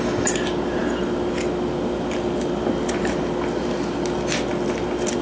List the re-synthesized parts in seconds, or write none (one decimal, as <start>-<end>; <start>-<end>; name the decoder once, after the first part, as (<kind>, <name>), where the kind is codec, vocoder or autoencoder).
none